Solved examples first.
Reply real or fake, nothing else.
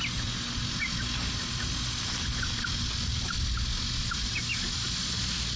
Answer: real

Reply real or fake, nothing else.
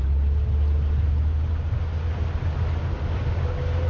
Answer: real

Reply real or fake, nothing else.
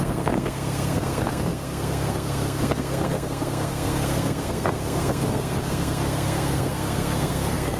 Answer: fake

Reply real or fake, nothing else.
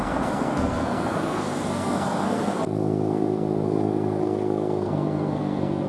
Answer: fake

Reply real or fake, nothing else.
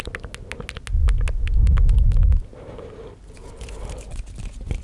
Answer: real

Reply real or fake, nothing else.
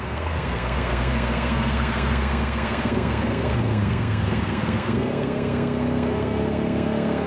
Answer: fake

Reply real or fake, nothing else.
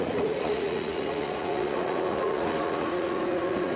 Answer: fake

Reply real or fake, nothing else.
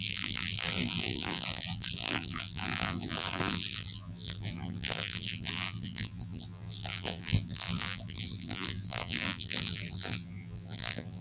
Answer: fake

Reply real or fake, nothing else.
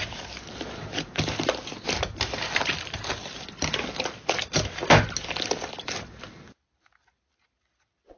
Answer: real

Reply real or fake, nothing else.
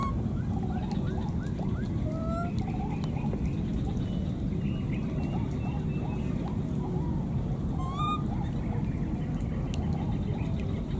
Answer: real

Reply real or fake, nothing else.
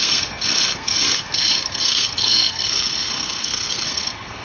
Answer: fake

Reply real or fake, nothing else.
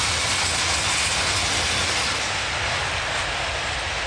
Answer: real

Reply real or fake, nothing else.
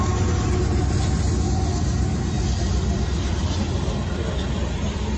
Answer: real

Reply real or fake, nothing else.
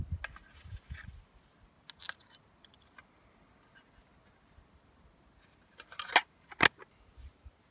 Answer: real